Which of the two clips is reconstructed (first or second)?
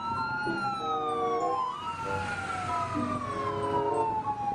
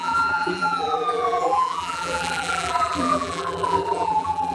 second